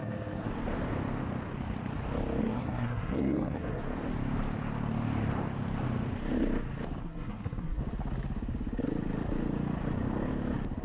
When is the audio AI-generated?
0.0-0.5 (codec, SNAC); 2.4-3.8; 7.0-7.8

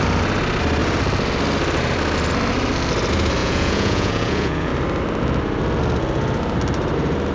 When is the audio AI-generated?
3.4-4.7 (vocoder, Vocos)

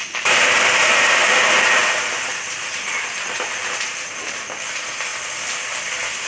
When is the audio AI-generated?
0.0-5.1 (vocoder, BigVGAN v2)